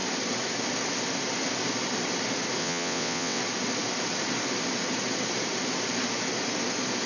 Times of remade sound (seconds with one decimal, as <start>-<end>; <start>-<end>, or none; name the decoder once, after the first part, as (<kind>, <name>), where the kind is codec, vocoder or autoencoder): 2.6-3.4 (vocoder, WaveNeXt)